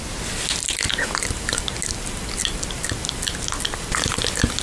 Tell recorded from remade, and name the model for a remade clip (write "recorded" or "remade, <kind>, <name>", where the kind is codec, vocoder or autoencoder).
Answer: recorded